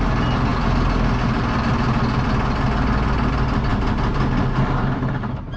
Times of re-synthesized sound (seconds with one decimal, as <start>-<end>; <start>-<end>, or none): none